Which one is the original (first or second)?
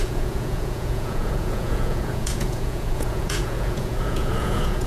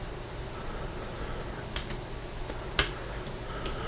second